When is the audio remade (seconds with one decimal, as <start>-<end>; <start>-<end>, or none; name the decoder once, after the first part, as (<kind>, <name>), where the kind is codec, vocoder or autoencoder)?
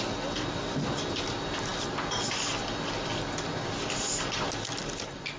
none